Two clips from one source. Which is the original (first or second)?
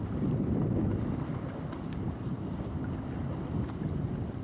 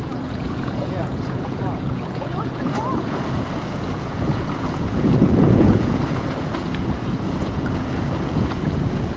first